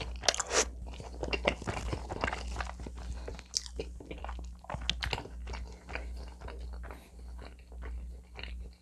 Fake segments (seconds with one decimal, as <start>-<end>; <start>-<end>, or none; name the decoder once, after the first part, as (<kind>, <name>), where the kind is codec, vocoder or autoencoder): none